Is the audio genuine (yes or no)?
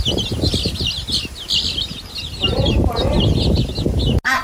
yes